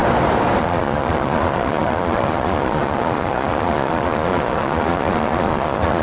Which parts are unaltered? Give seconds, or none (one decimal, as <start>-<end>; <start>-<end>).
0.0-0.6